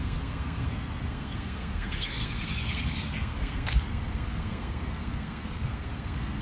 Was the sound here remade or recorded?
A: remade